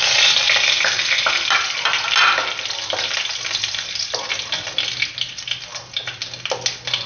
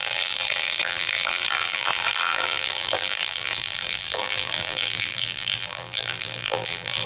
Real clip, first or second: first